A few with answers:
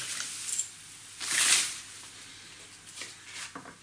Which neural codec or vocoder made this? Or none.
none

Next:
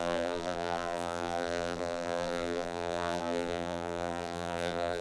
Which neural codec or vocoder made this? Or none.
vocoder, BigVGAN v2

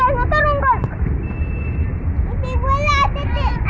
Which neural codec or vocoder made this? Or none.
none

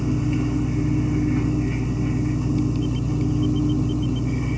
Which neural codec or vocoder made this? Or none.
none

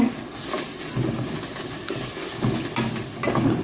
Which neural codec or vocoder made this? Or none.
none